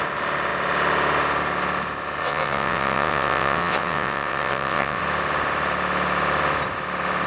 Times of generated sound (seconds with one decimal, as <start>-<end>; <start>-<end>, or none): 2.2-5.0